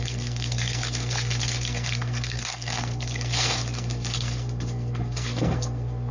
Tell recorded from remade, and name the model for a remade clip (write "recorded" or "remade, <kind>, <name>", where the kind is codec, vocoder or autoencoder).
remade, codec, SNAC